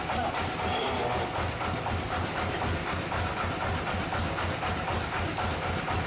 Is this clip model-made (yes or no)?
no